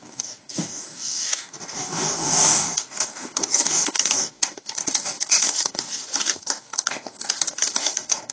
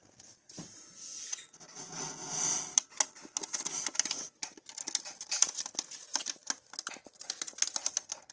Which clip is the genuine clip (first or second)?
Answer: second